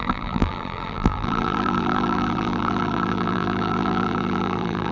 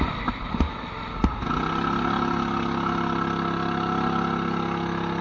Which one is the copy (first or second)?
first